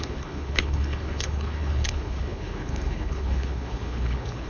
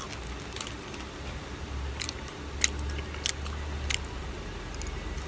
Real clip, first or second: second